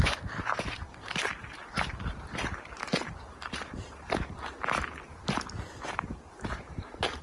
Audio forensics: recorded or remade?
remade